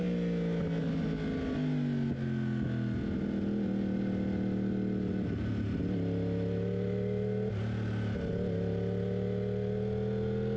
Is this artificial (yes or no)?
no